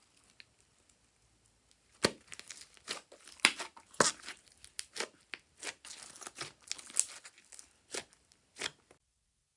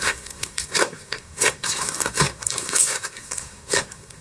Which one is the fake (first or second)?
second